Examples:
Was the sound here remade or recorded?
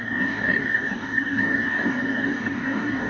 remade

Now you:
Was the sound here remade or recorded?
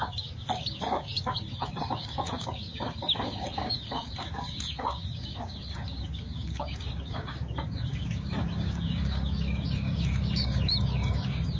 remade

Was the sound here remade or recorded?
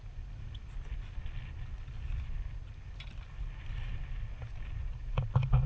recorded